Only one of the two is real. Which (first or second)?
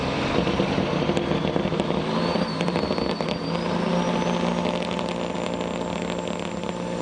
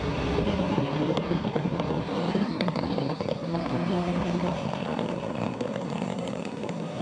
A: first